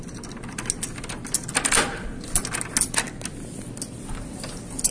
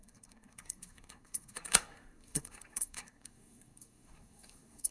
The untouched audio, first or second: first